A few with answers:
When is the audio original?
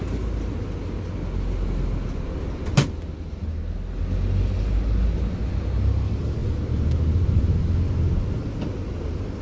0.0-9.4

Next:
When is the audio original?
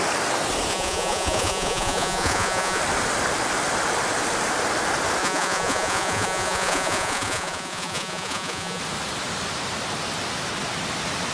0.0-0.7; 2.8-5.2; 8.8-11.3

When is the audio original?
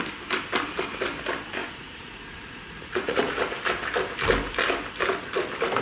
0.0-1.6; 3.4-5.8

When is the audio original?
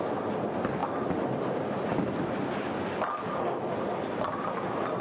0.0-5.0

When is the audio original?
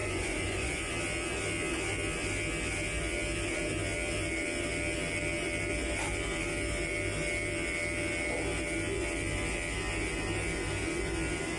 0.9-11.6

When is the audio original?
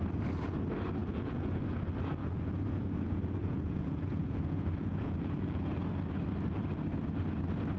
0.0-1.0; 1.6-2.2; 5.8-7.8